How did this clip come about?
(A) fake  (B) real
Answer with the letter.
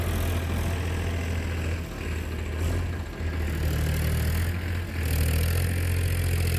B